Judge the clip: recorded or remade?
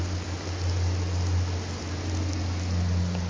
recorded